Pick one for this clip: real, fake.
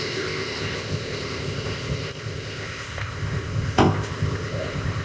fake